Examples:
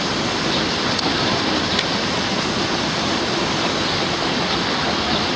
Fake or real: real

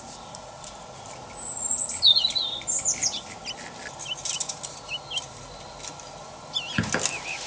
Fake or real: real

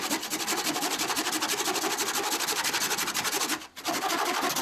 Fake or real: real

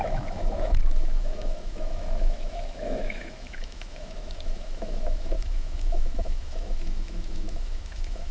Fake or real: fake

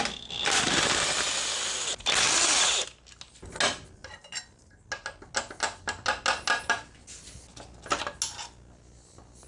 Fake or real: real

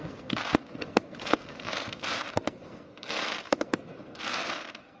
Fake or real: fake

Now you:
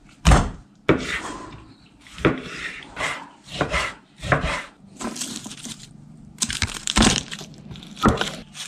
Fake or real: fake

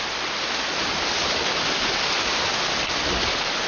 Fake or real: real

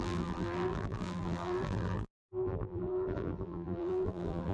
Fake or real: fake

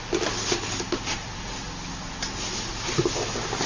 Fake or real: real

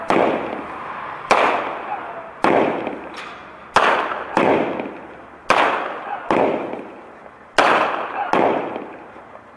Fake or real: real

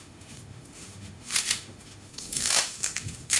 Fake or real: fake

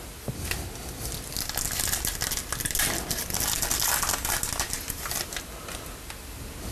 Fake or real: real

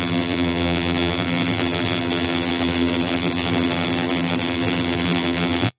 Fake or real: fake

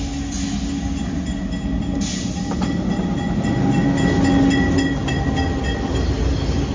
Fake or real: real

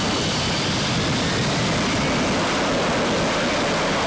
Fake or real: real